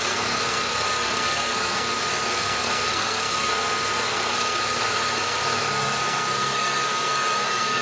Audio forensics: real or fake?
fake